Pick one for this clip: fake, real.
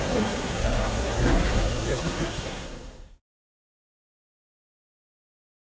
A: fake